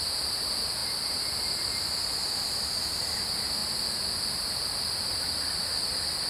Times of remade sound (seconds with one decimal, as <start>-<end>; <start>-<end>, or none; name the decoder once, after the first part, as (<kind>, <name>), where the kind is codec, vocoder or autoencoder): none